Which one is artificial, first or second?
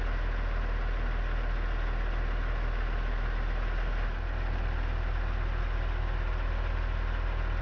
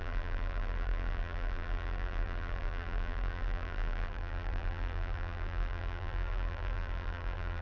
second